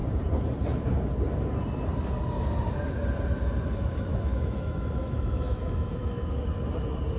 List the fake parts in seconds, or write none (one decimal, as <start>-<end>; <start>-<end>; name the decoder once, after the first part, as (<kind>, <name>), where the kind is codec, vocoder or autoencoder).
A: 4.1-6.4 (autoencoder, DAC-VAE)